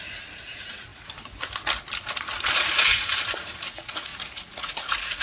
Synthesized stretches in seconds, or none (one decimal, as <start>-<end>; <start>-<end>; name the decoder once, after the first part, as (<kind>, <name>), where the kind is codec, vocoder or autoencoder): 0.0-0.9 (vocoder, Vocos); 2.2-5.2